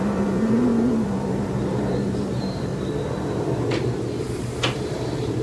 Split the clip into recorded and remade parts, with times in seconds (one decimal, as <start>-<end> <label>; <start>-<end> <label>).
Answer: 0.0-0.7 remade; 0.7-2.1 recorded; 2.1-2.7 remade; 2.7-4.2 recorded; 4.2-5.4 remade